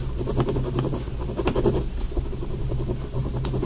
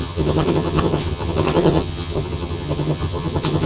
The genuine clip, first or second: first